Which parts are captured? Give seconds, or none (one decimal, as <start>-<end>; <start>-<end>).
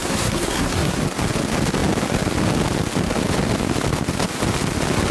1.0-5.1